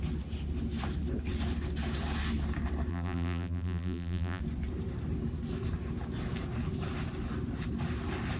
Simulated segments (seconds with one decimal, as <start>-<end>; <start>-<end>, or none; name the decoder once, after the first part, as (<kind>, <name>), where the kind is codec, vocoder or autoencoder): 2.9-4.4 (vocoder, BigVGAN v2)